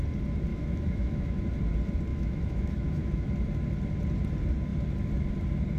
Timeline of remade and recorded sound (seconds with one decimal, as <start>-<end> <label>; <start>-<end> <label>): 0.0-0.5 recorded; 0.5-1.4 remade; 1.4-2.1 recorded; 2.1-3.3 remade; 3.3-5.8 recorded